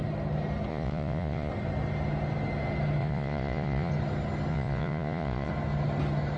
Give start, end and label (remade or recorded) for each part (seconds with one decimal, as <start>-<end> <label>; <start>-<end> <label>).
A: 0.0-0.7 recorded; 0.7-1.5 remade; 1.5-3.0 recorded; 3.0-3.9 remade; 3.9-4.5 recorded; 4.5-5.5 remade; 5.5-6.4 recorded